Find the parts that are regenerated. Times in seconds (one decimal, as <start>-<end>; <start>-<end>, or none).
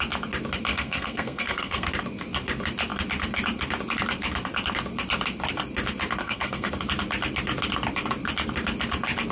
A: 0.7-1.9; 6.2-6.7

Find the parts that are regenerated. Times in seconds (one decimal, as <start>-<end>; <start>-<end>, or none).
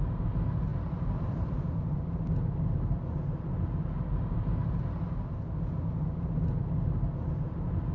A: 0.7-3.5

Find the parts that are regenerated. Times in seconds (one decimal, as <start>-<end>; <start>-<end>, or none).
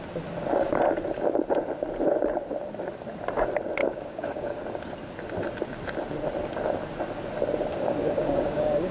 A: 3.8-4.6; 7.7-8.9